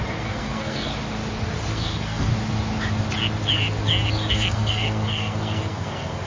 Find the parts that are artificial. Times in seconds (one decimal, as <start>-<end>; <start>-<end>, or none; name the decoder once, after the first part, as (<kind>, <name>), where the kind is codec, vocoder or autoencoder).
0.0-0.9 (codec, SNAC); 1.7-2.3; 4.3-6.3